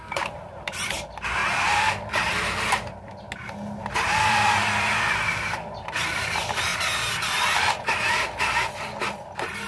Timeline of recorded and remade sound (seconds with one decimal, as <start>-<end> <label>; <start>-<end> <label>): 0.0-1.4 remade; 1.4-3.8 recorded; 3.8-6.7 remade; 6.7-9.0 recorded; 9.0-9.7 remade